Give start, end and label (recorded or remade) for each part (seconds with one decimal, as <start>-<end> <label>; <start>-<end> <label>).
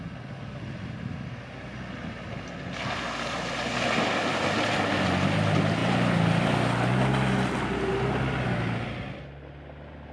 0.0-10.1 recorded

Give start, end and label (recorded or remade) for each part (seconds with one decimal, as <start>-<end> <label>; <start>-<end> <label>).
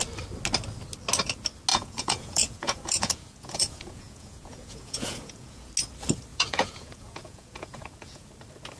0.0-1.7 recorded; 1.7-5.7 remade; 5.7-6.3 recorded; 6.3-8.3 remade; 8.3-8.8 recorded